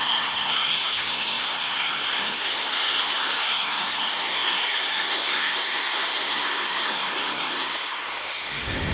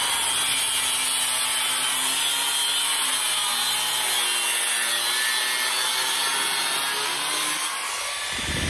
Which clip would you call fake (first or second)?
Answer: first